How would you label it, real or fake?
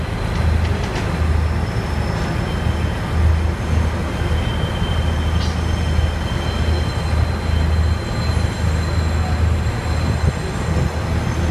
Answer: real